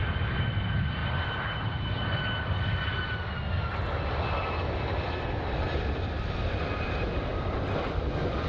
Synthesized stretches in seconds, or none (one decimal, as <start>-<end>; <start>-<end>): none